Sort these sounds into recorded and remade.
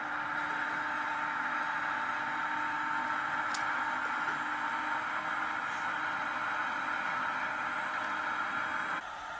recorded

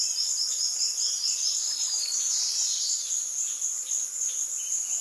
recorded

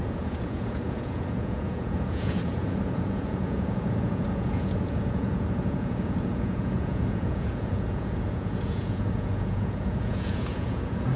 remade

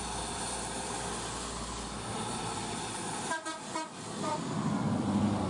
recorded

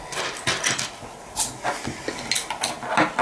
recorded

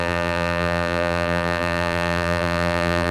remade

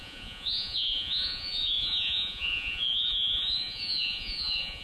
remade